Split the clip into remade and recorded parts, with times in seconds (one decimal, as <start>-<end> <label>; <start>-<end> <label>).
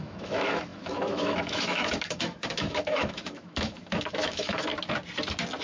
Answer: 0.0-4.7 remade; 4.7-5.6 recorded